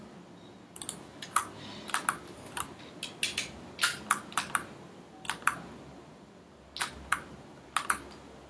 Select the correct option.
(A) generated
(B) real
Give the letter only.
B